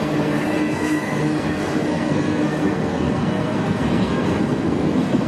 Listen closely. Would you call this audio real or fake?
fake